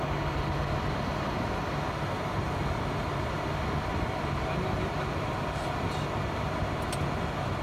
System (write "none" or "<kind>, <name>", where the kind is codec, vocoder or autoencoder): none